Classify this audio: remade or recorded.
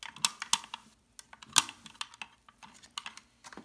recorded